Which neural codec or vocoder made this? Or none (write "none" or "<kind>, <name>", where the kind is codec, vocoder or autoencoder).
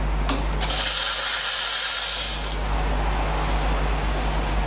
none